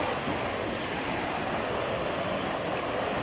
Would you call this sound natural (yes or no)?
yes